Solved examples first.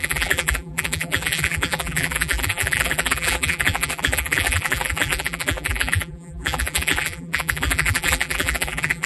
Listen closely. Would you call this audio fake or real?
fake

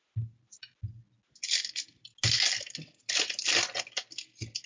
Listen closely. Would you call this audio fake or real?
real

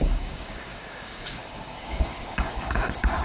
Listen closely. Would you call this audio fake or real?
fake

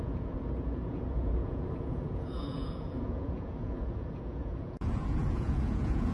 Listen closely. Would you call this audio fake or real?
fake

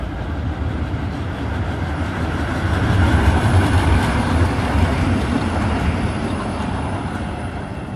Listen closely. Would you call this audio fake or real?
real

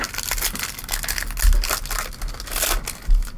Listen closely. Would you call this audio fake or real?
real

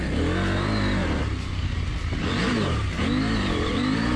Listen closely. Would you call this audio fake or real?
real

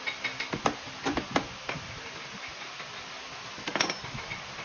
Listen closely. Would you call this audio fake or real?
real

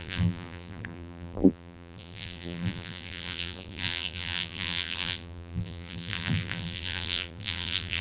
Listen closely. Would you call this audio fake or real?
fake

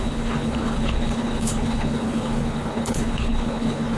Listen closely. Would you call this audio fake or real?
fake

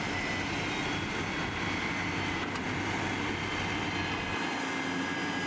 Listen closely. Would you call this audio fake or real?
real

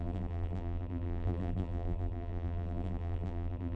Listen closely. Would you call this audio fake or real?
fake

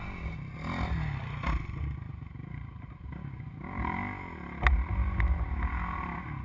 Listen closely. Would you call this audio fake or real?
real